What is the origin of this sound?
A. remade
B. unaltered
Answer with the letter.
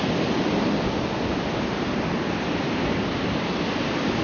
B